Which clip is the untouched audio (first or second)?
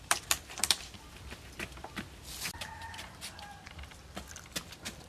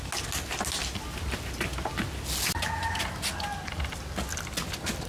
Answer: second